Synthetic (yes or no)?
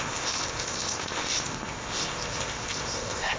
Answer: yes